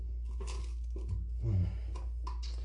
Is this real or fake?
real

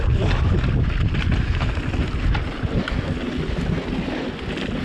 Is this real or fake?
real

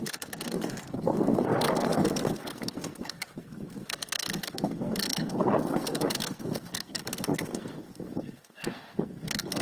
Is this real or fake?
fake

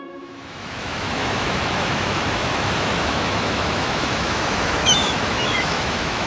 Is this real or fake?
fake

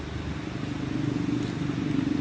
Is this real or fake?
real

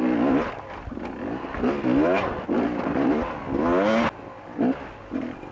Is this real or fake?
real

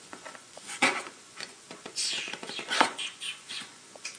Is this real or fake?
fake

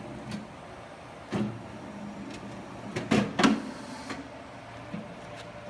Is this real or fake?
real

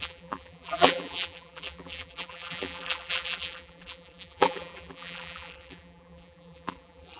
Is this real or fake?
fake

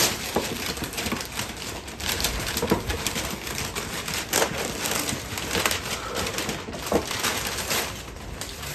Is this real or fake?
real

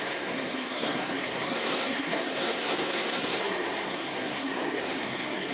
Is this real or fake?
fake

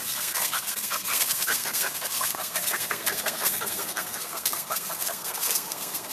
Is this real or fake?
fake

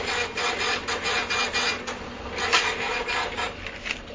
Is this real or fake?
real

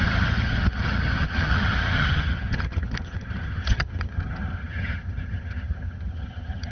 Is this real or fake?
fake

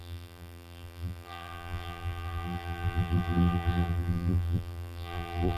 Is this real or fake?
fake